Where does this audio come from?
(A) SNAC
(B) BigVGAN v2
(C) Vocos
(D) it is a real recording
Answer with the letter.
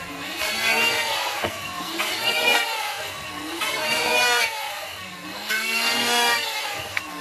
A